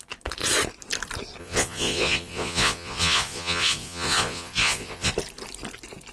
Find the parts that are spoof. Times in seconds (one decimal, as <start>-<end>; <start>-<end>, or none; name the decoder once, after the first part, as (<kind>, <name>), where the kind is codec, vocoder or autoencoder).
1.4-5.1 (vocoder, Vocos)